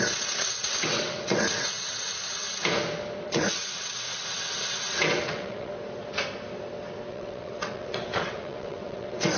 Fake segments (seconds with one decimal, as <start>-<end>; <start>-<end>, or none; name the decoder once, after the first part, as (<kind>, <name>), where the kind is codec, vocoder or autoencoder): 0.0-2.6 (vocoder, WaveNeXt); 3.2-5.7; 7.1-9.4